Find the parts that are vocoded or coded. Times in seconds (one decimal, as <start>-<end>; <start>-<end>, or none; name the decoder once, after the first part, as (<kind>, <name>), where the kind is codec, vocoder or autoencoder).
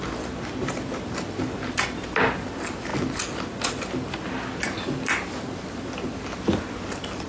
none